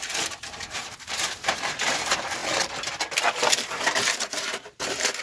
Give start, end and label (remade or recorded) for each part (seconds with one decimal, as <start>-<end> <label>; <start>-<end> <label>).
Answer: 0.0-2.4 remade; 2.4-4.3 recorded; 4.3-5.2 remade